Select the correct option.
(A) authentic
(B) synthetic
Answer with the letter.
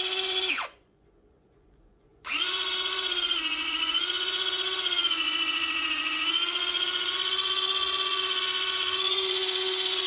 B